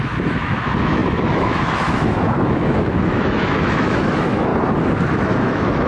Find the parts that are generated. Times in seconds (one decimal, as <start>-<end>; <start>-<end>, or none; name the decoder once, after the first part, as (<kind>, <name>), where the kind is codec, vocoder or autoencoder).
0.0-4.5 (autoencoder, DAC-VAE); 5.1-5.9